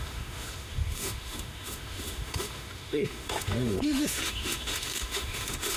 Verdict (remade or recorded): remade